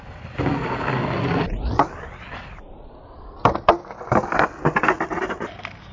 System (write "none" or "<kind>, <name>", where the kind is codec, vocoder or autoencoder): none